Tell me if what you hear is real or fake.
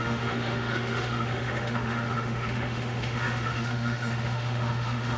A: fake